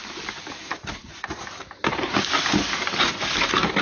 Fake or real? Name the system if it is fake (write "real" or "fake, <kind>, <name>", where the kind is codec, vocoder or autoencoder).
real